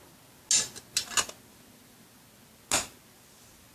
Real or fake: real